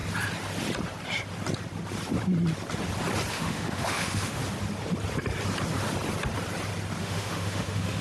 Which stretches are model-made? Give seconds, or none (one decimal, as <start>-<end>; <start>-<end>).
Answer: 3.3-4.4; 7.0-8.0